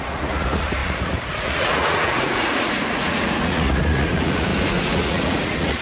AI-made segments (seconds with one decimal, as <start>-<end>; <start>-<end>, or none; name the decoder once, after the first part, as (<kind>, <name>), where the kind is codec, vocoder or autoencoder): 0.0-5.8 (vocoder, Vocos)